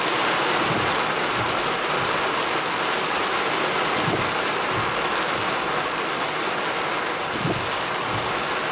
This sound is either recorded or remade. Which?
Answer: recorded